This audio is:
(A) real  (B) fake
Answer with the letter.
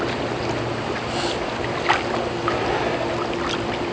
A